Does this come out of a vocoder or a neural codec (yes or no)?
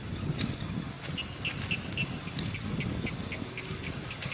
no